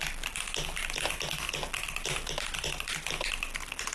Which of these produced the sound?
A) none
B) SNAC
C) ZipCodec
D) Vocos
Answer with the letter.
A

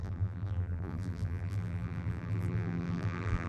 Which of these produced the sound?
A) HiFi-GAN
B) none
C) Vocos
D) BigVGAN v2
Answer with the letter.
D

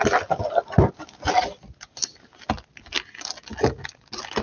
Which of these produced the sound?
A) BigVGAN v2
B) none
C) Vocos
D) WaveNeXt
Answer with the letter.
B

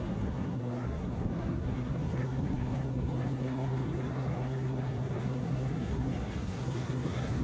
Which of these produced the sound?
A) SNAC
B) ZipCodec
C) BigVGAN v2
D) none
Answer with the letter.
A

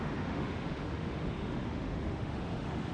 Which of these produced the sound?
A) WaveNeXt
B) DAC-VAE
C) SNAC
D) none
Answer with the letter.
B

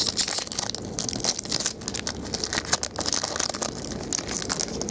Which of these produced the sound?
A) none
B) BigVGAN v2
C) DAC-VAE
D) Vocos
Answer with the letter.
A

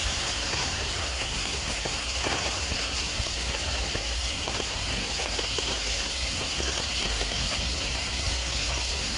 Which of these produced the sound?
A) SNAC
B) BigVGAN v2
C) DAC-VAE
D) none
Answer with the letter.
A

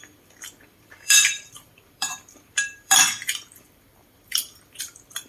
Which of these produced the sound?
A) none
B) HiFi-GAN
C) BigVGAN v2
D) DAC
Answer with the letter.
C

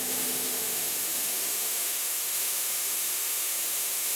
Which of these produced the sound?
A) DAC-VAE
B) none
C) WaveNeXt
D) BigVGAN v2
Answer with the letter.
A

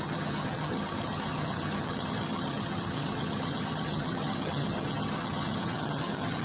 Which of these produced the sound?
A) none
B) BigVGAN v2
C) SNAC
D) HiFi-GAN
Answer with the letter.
D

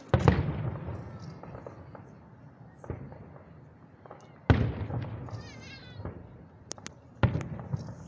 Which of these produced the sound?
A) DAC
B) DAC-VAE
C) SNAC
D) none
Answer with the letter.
D